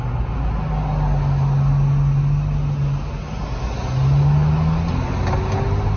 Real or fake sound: real